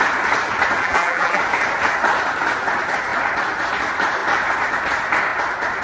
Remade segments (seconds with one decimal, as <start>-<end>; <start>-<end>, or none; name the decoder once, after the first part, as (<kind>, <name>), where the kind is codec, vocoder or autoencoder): 0.8-1.4 (vocoder, BigVGAN v2)